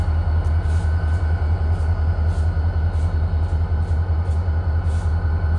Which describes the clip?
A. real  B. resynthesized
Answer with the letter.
A